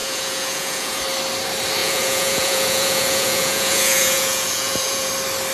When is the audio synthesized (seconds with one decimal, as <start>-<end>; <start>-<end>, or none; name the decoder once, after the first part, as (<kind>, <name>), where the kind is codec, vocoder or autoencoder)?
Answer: 0.0-1.0 (vocoder, Vocos); 1.8-5.1